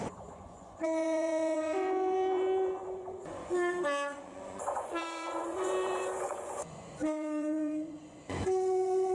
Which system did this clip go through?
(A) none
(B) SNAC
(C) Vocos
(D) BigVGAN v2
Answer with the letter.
C